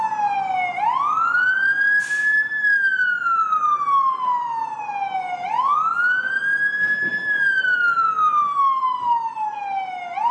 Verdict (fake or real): real